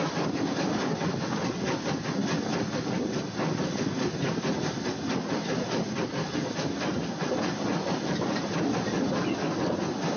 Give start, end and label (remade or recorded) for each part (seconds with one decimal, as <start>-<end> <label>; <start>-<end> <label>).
0.0-10.2 recorded